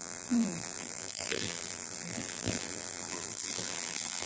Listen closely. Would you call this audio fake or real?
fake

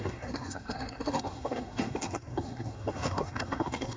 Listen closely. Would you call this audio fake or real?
fake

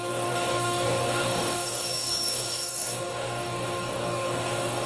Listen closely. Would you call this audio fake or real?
fake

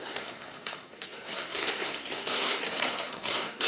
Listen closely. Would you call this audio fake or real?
fake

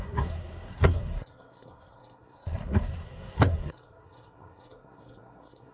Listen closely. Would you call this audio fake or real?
fake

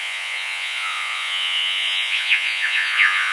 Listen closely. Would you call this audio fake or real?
fake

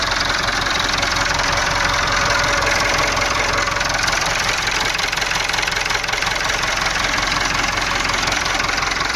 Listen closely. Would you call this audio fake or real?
fake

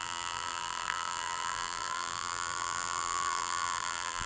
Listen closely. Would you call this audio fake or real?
fake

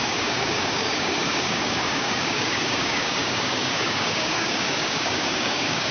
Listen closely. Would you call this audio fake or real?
fake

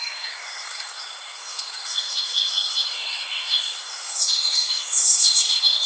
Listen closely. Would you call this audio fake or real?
fake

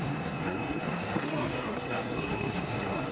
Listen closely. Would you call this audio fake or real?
fake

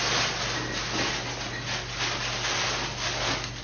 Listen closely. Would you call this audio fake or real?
real